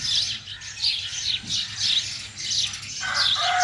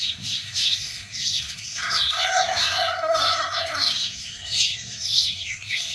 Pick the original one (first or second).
first